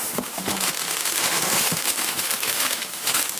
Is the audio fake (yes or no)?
yes